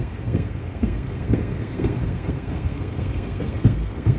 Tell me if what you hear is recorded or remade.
remade